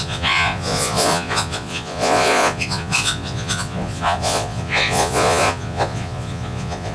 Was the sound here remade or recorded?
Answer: remade